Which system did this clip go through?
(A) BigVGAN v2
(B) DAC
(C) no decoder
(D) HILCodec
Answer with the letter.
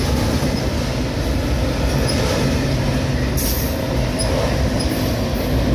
C